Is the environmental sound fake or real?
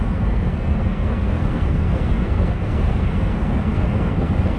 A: fake